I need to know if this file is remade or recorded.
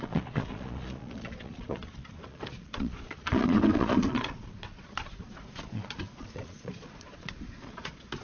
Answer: remade